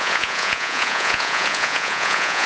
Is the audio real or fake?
fake